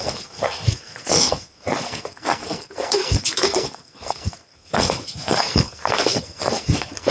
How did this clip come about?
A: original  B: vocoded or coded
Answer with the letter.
B